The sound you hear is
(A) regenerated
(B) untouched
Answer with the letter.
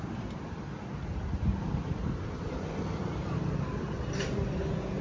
B